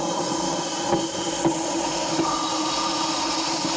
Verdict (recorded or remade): recorded